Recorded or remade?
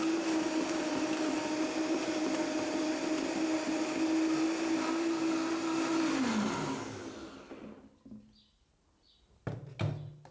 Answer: recorded